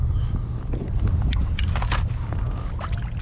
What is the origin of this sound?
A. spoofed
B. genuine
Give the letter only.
B